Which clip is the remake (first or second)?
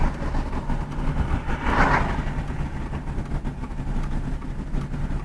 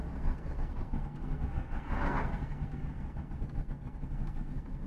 second